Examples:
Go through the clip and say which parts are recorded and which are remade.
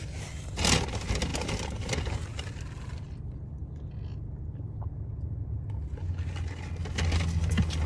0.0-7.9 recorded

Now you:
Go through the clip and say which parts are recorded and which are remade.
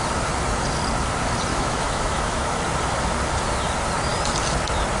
0.0-1.5 recorded; 1.5-2.6 remade; 2.6-5.0 recorded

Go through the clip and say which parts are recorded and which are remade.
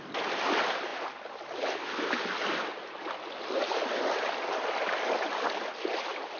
0.0-6.4 recorded